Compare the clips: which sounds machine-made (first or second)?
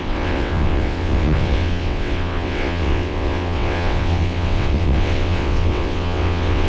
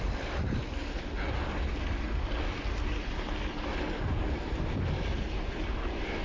first